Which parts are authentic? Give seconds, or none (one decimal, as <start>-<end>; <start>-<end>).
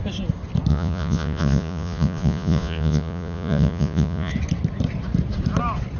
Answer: 0.0-0.7; 4.3-6.0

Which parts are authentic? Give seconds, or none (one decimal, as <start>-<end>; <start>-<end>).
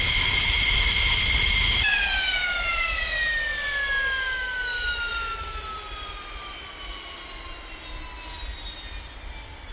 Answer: 0.0-9.7